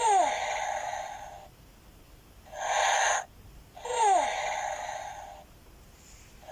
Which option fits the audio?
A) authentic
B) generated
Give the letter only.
A